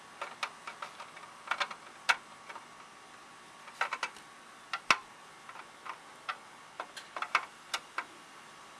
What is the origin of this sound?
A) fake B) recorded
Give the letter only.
B